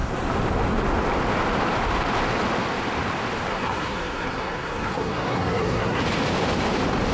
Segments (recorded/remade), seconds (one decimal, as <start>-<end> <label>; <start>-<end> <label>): 0.0-3.5 recorded; 3.5-6.0 remade; 6.0-7.1 recorded